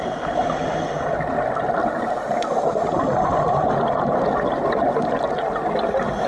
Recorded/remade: recorded